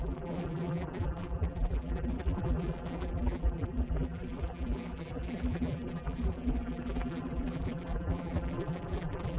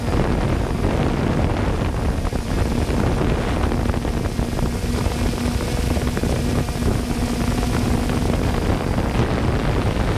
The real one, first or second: second